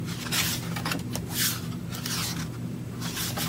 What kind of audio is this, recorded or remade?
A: recorded